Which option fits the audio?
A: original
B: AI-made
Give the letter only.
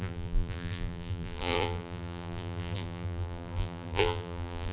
B